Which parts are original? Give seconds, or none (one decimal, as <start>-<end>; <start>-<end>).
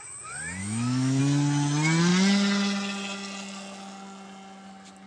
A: 0.0-0.6; 1.2-5.1